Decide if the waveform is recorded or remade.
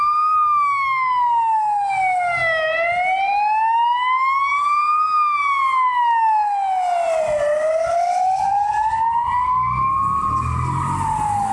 recorded